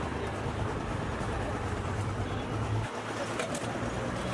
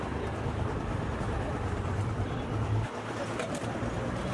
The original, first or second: first